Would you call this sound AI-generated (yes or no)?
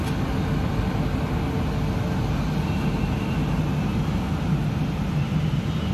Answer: no